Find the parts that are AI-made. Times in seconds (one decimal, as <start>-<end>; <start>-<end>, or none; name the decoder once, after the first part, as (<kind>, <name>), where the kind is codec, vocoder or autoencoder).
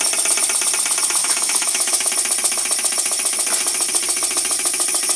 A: 1.2-2.1 (autoencoder, DAC-VAE)